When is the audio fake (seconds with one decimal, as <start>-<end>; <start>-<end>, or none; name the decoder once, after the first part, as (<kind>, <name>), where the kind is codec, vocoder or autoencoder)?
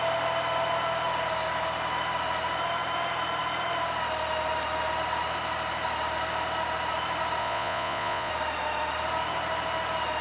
7.4-8.3 (vocoder, Vocos)